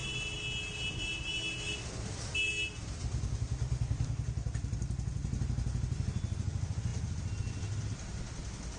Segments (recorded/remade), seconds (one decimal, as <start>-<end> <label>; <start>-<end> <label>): 0.0-8.8 recorded